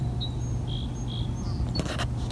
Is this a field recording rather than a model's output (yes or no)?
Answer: yes